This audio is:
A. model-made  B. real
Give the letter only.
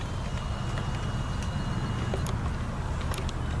B